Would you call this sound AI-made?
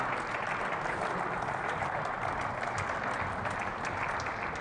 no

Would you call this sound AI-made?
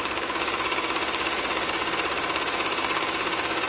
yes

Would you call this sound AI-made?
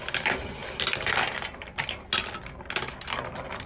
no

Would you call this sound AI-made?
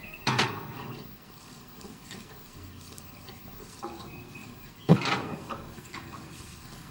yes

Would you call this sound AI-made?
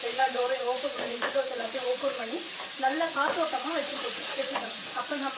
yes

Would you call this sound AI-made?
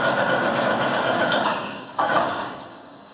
yes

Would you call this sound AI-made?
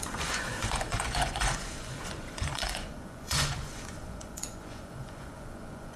yes